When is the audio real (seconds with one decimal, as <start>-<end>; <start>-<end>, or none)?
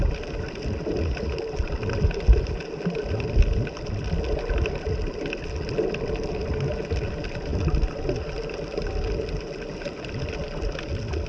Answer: 0.0-11.3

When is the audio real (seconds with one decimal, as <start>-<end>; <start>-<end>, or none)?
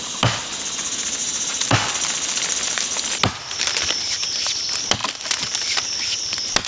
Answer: 0.0-1.2; 1.9-6.7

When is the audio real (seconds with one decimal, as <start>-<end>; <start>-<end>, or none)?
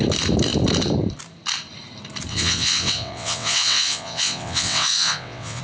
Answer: 0.0-2.3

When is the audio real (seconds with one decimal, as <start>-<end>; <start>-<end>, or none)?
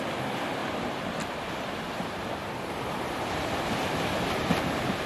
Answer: 0.0-0.6; 3.7-5.1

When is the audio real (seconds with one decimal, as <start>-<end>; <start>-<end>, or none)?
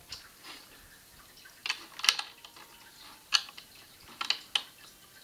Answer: 0.0-1.6; 2.7-3.3; 3.8-5.2